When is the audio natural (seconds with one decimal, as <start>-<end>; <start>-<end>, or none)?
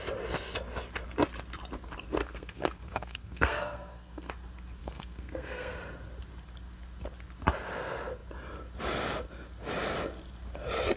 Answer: 0.0-2.2; 4.3-4.8; 5.7-11.0